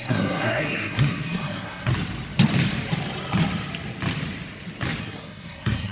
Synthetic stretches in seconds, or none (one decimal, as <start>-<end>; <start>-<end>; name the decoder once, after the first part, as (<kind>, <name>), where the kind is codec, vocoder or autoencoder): 0.0-1.9 (codec, SNAC); 5.0-5.9